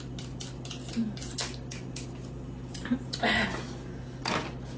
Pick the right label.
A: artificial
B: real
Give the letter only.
B